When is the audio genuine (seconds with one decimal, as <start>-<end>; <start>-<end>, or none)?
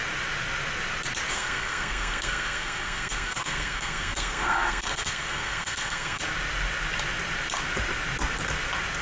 0.0-1.3; 6.2-9.0